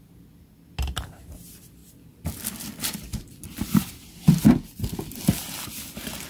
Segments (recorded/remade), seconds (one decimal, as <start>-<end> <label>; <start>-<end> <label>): 0.0-3.1 recorded; 3.1-5.2 remade; 5.2-6.3 recorded